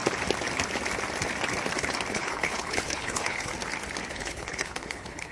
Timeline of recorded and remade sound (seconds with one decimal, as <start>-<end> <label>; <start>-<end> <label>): 0.0-2.1 recorded; 2.1-3.5 remade; 3.5-4.1 recorded; 4.1-5.3 remade